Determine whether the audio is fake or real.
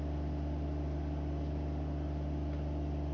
real